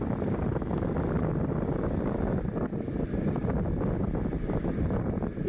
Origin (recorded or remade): recorded